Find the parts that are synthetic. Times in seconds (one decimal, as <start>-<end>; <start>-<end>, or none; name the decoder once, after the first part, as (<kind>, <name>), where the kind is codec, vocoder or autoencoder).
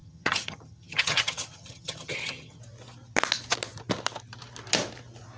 0.0-2.6 (vocoder, HiFi-GAN)